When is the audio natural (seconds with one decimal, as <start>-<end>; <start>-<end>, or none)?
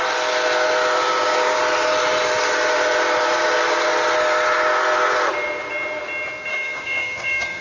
0.0-1.1; 1.6-6.5